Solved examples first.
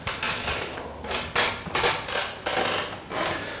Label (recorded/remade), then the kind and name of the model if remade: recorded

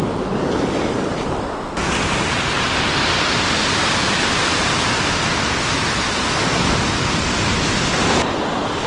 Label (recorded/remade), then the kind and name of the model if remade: recorded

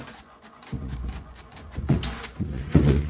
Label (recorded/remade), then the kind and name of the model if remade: remade, vocoder, Vocos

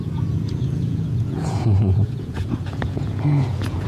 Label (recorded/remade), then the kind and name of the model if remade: remade, vocoder, Vocos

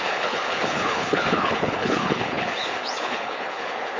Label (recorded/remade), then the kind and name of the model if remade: remade, codec, HILCodec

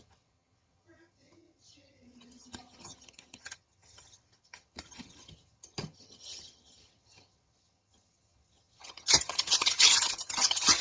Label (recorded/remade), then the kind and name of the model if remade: remade, vocoder, HiFi-GAN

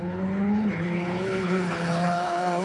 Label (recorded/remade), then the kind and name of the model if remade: remade, codec, HILCodec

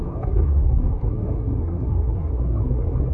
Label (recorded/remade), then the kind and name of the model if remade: remade, codec, SNAC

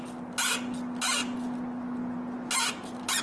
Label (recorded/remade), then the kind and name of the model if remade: recorded